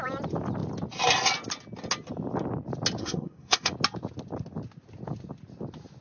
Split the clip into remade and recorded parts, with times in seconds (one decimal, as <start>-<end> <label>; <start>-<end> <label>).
0.0-3.0 recorded; 3.0-3.7 remade; 3.7-6.0 recorded